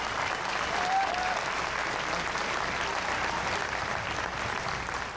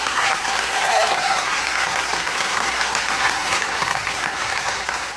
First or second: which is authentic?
first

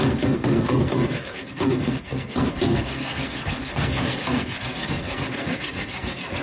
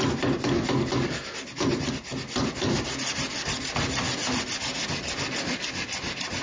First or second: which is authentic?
second